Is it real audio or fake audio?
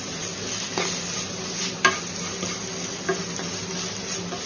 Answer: real